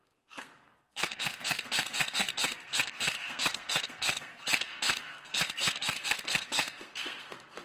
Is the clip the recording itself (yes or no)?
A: no